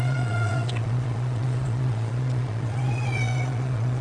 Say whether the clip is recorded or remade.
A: remade